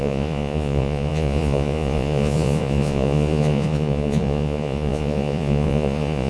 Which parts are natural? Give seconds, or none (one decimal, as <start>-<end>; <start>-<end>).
none